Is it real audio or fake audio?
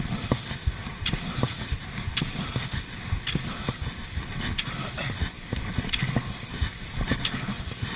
real